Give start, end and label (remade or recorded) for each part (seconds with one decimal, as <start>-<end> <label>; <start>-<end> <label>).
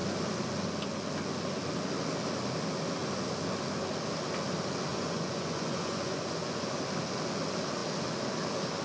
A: 0.0-4.9 recorded; 4.9-6.7 remade; 6.7-8.8 recorded